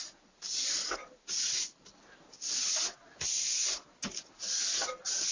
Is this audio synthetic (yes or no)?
no